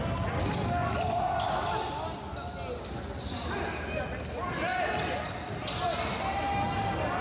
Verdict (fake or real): real